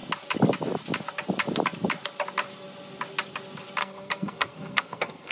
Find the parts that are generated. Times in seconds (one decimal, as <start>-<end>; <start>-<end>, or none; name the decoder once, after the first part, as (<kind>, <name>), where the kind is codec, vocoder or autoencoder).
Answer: 3.8-5.3 (codec, SNAC)